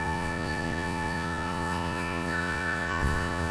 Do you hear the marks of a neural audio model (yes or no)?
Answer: yes